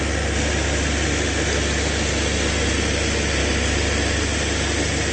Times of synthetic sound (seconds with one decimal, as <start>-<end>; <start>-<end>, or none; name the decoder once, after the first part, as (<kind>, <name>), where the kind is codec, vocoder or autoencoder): none